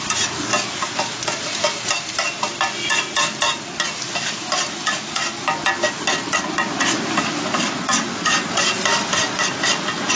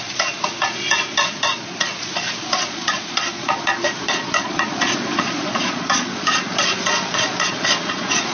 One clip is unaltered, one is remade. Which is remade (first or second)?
second